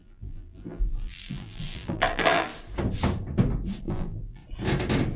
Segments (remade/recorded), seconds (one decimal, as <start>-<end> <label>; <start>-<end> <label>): 0.0-2.5 remade; 2.5-3.8 recorded; 3.8-4.4 remade; 4.4-5.2 recorded